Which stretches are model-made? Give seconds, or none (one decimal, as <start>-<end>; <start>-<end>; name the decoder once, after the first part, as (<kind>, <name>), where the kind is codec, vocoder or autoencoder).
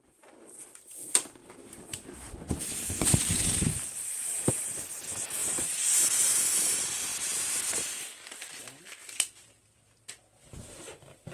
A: 1.4-4.5 (vocoder, BigVGAN v2); 5.4-6.3; 9.0-9.8